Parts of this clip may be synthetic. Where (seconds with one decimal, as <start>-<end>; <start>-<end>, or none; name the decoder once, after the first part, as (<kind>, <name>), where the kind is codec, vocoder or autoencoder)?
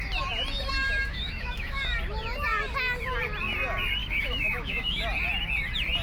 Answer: 0.8-1.8 (autoencoder, DAC-VAE); 4.0-5.0